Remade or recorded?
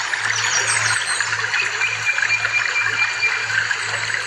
recorded